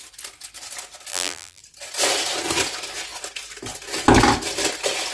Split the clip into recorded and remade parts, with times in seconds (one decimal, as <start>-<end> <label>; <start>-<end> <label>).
0.0-1.1 recorded; 1.1-1.6 remade; 1.6-5.1 recorded